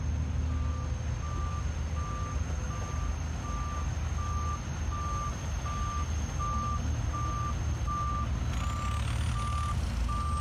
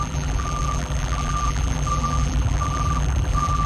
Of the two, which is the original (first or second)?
first